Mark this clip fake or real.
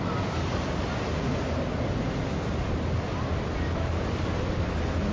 real